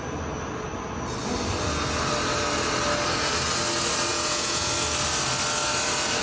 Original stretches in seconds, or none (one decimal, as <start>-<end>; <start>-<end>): 0.0-4.1; 4.7-6.2